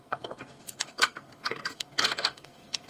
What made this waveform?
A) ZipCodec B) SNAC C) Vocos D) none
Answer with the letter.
B